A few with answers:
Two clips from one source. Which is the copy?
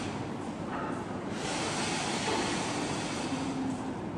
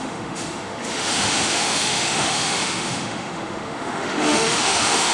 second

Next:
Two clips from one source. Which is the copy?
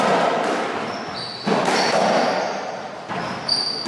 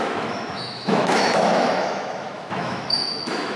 second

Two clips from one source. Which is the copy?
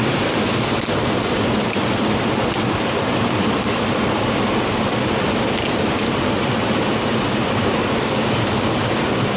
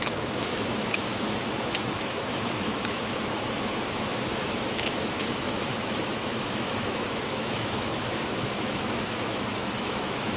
second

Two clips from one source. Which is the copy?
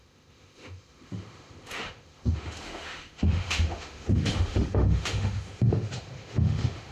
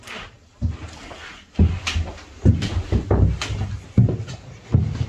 first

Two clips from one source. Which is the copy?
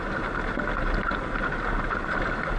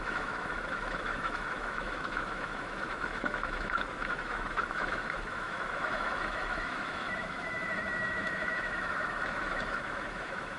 second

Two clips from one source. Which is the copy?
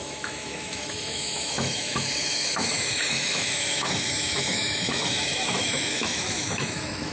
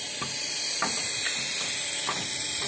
first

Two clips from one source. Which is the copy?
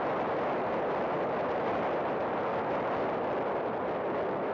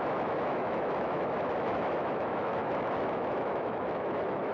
second